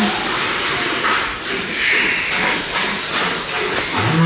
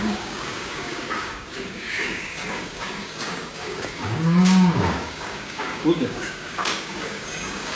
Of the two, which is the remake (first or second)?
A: second